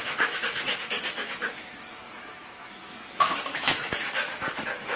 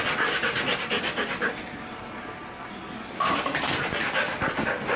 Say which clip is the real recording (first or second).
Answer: second